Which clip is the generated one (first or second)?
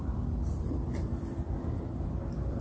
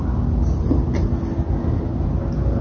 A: first